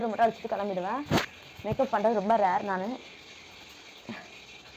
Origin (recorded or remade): recorded